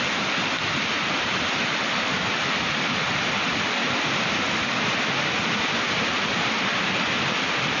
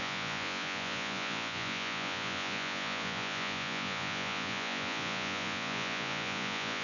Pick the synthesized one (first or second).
second